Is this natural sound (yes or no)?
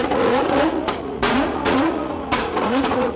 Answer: no